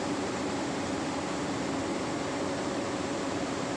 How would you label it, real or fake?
fake